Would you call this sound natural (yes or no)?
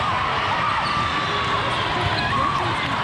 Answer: yes